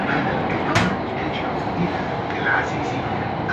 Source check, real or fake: real